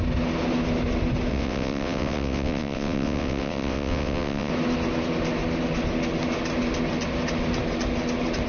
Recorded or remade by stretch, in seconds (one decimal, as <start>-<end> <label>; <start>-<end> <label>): 0.0-1.3 recorded; 1.3-4.5 remade; 4.5-8.5 recorded